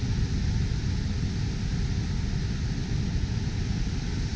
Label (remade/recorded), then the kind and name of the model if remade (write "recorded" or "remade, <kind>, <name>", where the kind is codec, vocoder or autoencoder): recorded